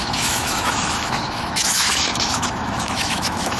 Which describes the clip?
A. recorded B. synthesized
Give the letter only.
B